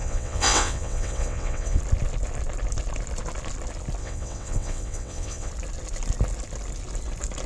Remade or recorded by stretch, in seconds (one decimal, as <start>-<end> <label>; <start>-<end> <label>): 0.0-1.8 remade; 1.8-4.0 recorded; 4.0-5.5 remade; 5.5-7.5 recorded